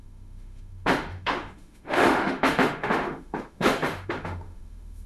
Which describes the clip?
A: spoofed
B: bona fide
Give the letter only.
A